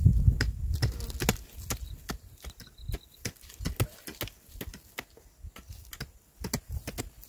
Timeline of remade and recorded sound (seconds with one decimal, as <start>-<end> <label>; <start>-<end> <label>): 0.0-7.3 recorded